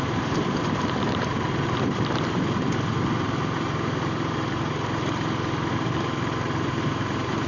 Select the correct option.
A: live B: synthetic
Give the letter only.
B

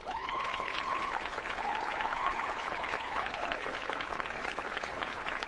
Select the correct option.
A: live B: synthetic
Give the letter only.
B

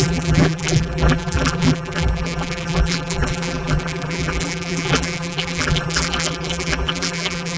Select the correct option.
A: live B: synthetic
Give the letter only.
B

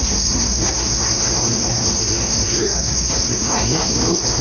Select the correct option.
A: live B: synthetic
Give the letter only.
B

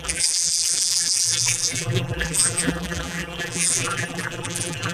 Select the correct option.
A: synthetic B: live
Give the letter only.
A